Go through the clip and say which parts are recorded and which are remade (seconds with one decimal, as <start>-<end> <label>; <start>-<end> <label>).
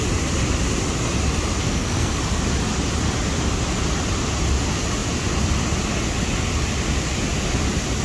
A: 0.0-1.6 recorded; 1.6-2.2 remade; 2.2-8.0 recorded